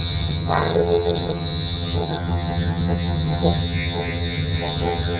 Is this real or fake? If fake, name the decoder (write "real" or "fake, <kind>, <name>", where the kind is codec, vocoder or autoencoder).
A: fake, vocoder, HiFi-GAN